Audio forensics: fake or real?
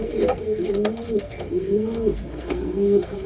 fake